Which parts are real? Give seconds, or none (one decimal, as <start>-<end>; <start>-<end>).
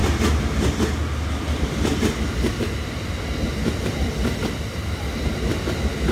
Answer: 0.0-6.1